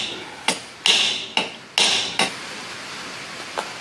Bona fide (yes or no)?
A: yes